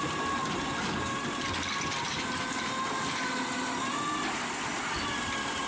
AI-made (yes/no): no